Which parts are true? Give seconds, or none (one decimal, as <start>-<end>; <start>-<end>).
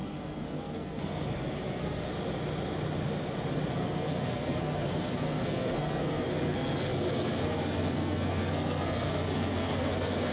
2.1-3.7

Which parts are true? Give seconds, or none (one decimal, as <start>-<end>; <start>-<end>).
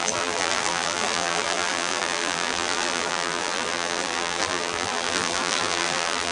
none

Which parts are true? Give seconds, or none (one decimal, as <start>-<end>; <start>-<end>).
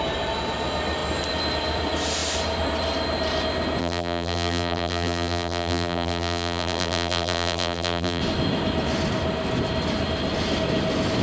0.0-3.8; 8.2-11.2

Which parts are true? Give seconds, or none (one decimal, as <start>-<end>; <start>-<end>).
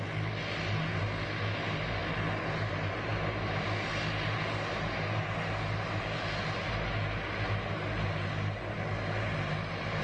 0.0-10.0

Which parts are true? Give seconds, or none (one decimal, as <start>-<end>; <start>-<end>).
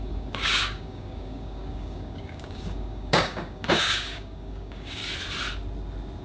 5.0-6.2